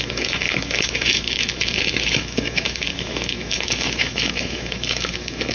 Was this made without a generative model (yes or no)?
no